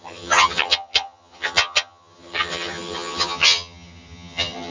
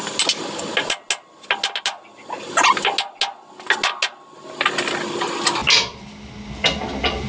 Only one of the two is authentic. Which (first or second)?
second